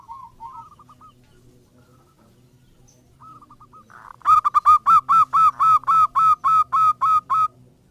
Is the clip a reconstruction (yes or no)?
no